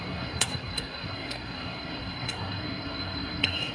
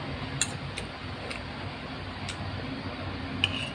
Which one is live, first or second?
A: second